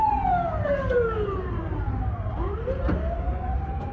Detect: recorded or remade remade